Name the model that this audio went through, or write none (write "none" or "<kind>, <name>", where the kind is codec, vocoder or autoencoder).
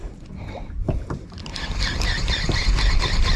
none